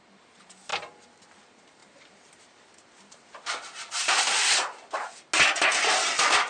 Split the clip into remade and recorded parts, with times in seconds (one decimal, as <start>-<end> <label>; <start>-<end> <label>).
0.0-1.8 recorded; 1.8-4.5 remade; 4.5-6.5 recorded